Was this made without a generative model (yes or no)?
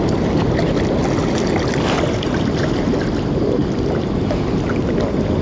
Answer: yes